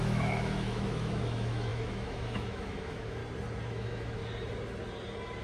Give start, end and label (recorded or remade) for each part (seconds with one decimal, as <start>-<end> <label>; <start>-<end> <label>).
0.0-3.2 remade; 3.2-3.7 recorded; 3.7-4.2 remade; 4.2-5.4 recorded